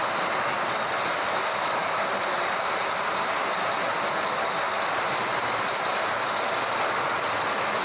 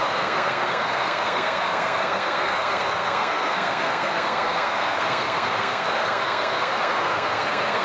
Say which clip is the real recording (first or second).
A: first